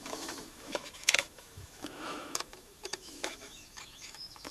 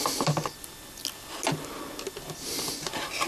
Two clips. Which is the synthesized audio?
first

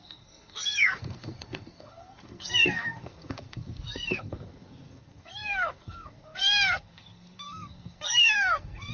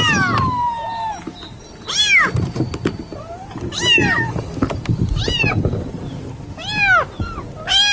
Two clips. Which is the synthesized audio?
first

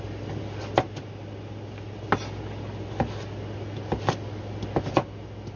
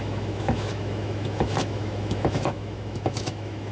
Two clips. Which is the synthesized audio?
second